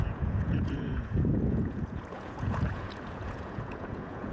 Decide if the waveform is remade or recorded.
remade